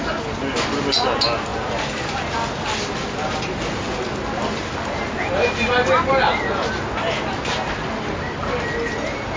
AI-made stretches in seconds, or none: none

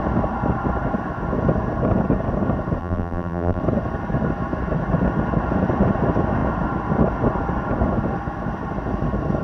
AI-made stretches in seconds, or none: 2.8-3.6 (vocoder, BigVGAN v2)

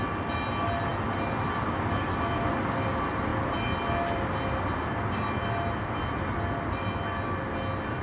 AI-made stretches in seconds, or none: none

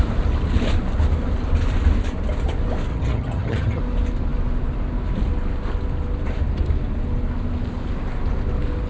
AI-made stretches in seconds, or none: 2.9-3.8 (vocoder, HiFi-GAN)

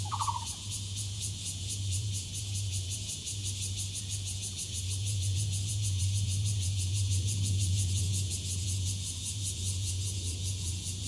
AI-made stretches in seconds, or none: 0.0-3.4 (vocoder, Vocos); 4.0-11.1

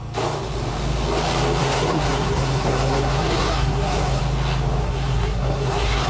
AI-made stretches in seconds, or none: 1.6-4.2 (codec, SNAC); 4.8-6.1

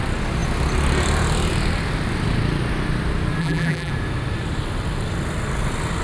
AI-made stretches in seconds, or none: 3.4-3.9 (vocoder, BigVGAN v2)